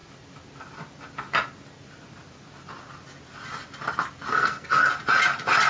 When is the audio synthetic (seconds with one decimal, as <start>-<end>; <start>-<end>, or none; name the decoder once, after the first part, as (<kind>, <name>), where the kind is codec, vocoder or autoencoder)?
4.3-4.9 (codec, SNAC)